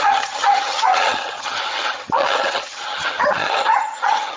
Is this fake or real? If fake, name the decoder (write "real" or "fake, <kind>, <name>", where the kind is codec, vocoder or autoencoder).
fake, vocoder, HiFi-GAN